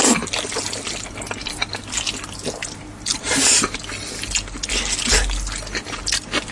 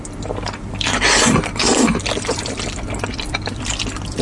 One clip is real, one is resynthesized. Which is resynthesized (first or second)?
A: second